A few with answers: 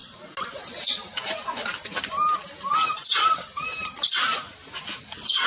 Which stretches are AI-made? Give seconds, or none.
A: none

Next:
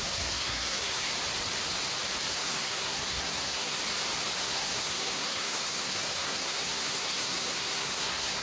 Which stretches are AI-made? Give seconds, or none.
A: 0.0-1.1 (codec, SNAC); 2.3-3.8; 4.4-8.4

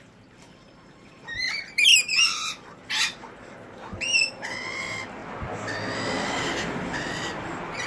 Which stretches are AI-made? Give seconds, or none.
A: 0.0-5.2 (vocoder, BigVGAN v2); 6.4-7.9

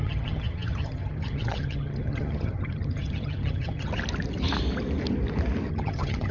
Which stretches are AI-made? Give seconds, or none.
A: 0.0-3.9 (vocoder, HiFi-GAN); 5.7-6.3

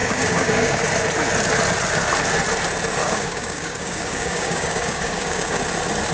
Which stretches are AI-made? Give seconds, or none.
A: 0.0-0.8 (codec, DAC); 3.0-5.6